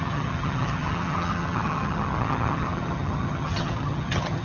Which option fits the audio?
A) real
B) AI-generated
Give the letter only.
B